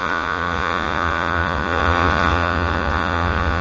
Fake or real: fake